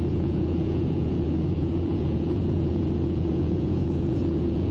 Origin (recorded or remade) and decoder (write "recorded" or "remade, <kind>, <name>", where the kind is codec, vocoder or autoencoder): remade, vocoder, Vocos